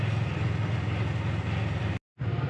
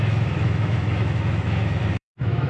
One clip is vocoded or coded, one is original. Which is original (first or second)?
first